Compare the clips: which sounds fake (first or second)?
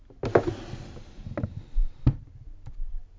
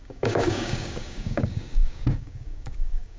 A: second